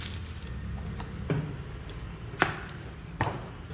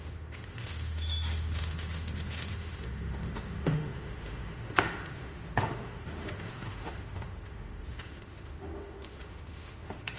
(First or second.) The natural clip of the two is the first